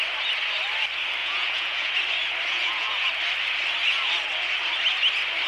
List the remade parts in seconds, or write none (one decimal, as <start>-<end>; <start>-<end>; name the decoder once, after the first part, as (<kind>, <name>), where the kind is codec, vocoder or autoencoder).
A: 1.2-1.9 (vocoder, Vocos); 2.5-3.1